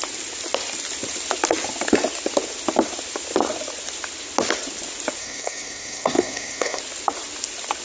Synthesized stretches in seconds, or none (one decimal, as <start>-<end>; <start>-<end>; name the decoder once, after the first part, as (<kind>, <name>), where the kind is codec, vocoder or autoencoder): 5.2-6.8 (codec, SNAC)

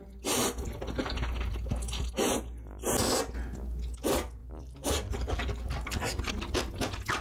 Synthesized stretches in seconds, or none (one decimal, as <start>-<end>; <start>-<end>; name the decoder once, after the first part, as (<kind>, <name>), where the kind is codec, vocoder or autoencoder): 4.4-6.3 (vocoder, BigVGAN v2)

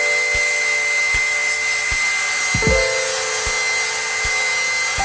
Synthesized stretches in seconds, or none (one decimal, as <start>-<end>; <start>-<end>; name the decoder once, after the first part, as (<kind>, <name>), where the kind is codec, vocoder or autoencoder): none

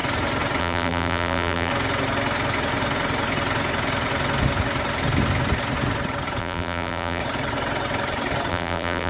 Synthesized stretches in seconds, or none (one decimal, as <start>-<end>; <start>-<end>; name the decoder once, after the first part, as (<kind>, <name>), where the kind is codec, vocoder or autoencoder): 0.6-1.7 (vocoder, BigVGAN v2); 6.4-7.2; 8.5-9.1

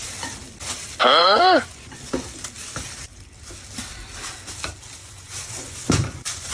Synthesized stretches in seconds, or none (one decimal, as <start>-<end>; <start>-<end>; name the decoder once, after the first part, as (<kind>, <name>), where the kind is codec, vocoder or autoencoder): 1.2-2.0 (vocoder, Vocos); 5.0-6.5

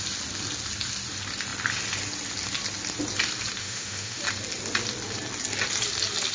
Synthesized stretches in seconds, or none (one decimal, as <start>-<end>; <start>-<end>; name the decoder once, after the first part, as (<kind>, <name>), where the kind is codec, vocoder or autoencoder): 3.6-4.2 (autoencoder, DAC-VAE)

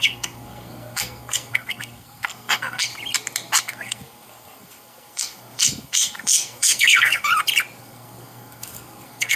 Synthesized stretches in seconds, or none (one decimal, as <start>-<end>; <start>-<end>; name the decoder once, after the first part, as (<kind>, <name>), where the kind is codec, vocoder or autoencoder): 0.0-2.9 (codec, SNAC); 3.6-7.3; 7.8-9.4

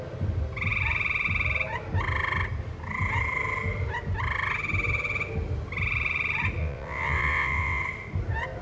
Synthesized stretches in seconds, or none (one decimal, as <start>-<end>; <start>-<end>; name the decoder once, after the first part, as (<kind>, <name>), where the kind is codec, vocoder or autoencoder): 6.6-7.8 (vocoder, WaveNeXt)